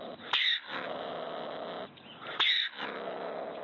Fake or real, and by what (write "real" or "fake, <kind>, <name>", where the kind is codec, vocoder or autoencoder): real